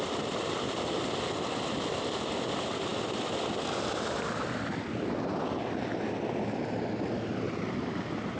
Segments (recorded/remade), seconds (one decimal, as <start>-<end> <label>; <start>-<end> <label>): 0.0-8.4 recorded